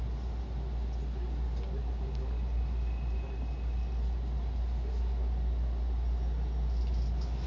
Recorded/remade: recorded